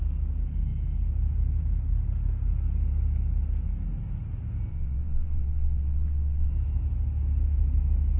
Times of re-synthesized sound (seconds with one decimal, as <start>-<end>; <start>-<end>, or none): 4.7-6.5